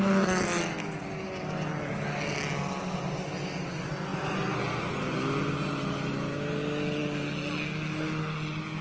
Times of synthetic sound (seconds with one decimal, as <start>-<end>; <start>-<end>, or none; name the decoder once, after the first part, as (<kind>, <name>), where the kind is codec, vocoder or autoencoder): none